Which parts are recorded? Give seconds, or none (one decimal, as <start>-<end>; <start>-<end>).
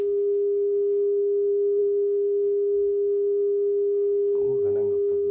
none